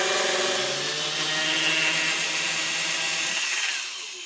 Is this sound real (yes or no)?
yes